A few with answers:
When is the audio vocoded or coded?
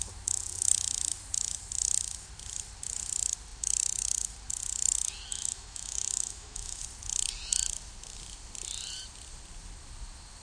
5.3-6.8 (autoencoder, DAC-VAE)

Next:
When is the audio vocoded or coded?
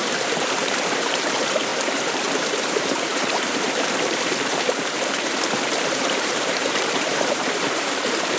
0.0-8.4 (vocoder, BigVGAN v2)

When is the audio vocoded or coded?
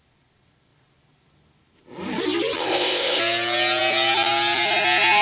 2.6-3.2 (codec, ZipCodec)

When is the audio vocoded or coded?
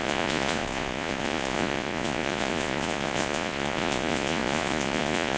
0.0-5.4 (vocoder, Vocos)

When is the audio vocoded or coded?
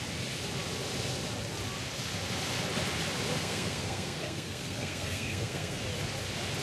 3.4-5.8 (codec, SNAC)